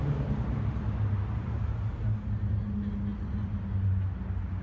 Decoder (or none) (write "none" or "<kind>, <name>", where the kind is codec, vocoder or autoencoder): none